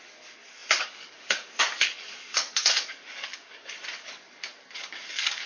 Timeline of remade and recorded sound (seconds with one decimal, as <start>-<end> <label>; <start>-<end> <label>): 0.0-5.5 remade